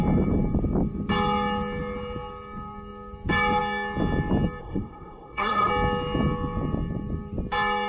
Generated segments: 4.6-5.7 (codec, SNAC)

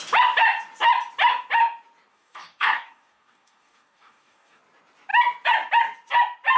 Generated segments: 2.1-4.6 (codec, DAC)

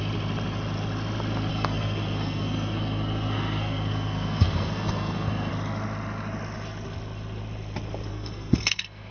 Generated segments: 1.5-5.5 (codec, SNAC); 8.1-9.1

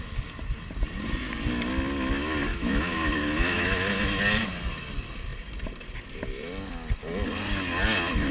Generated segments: 2.5-4.2 (autoencoder, DAC-VAE)

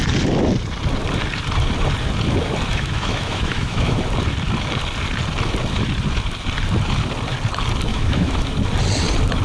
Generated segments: 2.7-4.0 (autoencoder, DAC-VAE); 7.9-8.5